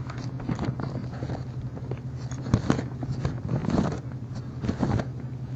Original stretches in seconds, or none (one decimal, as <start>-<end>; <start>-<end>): 0.0-3.6; 4.3-5.6